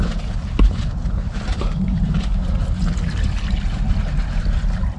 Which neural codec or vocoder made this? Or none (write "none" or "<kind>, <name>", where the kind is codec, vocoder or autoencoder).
none